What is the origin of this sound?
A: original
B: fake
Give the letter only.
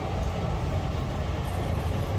A